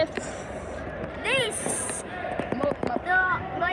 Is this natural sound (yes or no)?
no